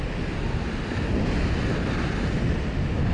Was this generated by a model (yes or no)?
no